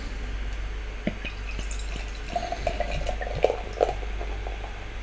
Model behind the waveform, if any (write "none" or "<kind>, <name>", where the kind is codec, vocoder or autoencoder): none